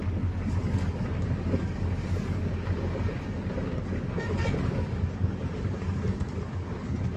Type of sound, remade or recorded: remade